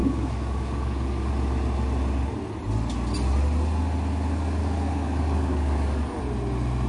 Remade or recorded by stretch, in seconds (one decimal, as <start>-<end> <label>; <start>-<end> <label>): 0.0-1.3 remade; 1.3-4.6 recorded; 4.6-6.2 remade; 6.2-6.9 recorded